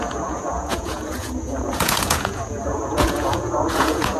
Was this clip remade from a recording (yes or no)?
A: yes